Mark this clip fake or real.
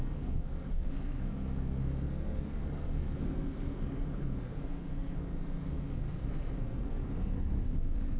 fake